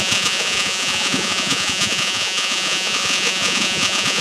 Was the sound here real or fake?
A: fake